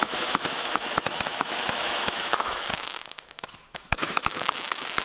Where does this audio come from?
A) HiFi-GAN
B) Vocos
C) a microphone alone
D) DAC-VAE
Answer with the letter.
D